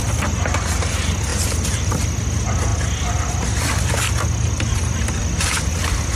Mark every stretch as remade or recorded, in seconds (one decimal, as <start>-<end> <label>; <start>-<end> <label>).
0.0-6.2 recorded

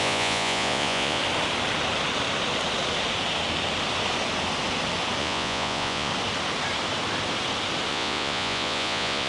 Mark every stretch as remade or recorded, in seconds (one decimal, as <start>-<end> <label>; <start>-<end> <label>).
0.0-1.2 remade; 1.2-5.2 recorded; 5.2-6.1 remade; 6.1-7.9 recorded; 7.9-9.3 remade

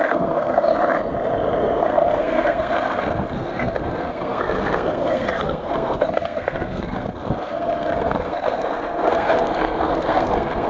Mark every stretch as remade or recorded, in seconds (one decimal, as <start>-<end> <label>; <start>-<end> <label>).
0.0-0.7 remade; 0.7-1.6 recorded; 1.6-10.7 remade

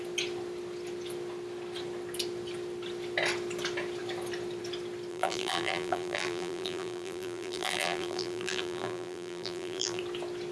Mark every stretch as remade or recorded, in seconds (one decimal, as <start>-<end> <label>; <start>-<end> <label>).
0.0-5.1 recorded; 5.1-10.0 remade; 10.0-10.5 recorded

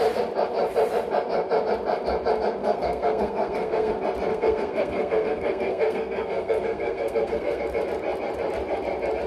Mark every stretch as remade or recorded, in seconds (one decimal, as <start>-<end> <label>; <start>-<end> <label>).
0.0-2.6 recorded; 2.6-3.9 remade; 3.9-4.3 recorded; 4.3-7.6 remade; 7.6-9.3 recorded

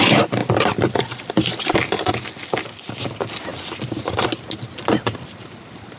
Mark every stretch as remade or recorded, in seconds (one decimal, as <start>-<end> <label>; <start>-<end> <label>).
0.0-6.0 recorded